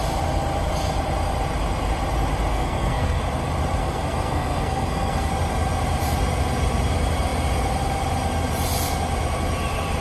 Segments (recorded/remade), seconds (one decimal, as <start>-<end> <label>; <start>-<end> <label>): 0.0-2.5 recorded; 2.5-3.2 remade; 3.2-3.8 recorded; 3.8-5.3 remade; 5.3-10.0 recorded